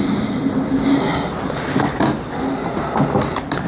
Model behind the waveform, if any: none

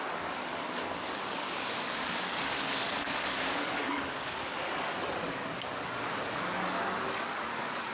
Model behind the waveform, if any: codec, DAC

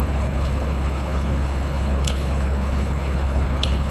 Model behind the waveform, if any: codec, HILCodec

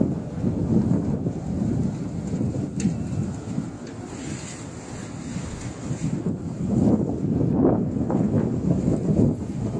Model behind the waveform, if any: vocoder, BigVGAN v2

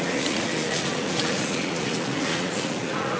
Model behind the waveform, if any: vocoder, Vocos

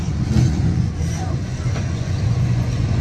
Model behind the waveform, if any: vocoder, Vocos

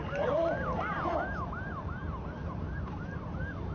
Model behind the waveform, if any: vocoder, BigVGAN v2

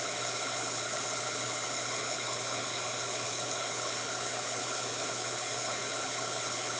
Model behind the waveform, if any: codec, HILCodec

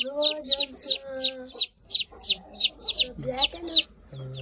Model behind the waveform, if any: none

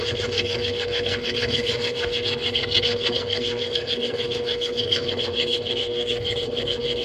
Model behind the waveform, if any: codec, SNAC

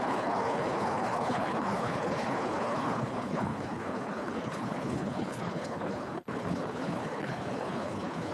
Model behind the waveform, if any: codec, HILCodec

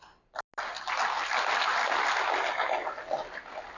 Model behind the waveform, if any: none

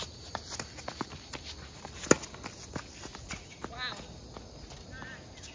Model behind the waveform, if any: none